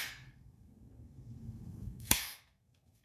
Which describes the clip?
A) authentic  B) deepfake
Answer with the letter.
B